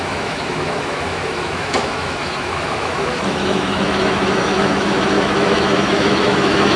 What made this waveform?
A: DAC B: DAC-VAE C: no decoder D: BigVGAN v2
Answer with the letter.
B